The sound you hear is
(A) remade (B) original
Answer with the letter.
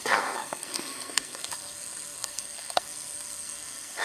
A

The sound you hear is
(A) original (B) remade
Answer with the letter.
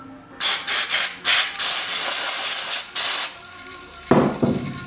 A